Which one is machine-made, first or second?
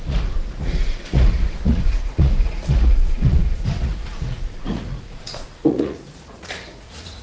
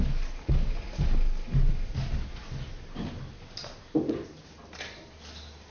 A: first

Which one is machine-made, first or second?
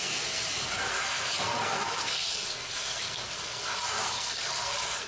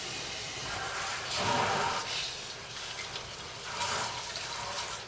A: first